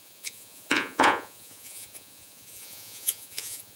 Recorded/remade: remade